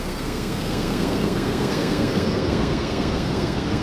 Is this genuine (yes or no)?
no